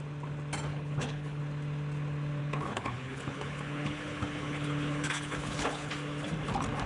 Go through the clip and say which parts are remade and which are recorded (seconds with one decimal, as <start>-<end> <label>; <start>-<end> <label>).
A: 0.0-0.7 recorded; 0.7-1.4 remade; 1.4-2.4 recorded; 2.4-5.9 remade; 5.9-6.9 recorded